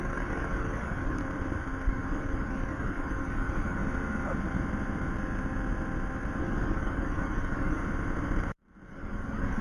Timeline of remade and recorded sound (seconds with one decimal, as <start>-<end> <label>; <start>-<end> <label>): 0.0-1.2 remade; 1.2-1.9 recorded; 1.9-3.8 remade; 3.8-6.4 recorded; 6.4-7.8 remade; 7.8-8.9 recorded; 8.9-9.6 remade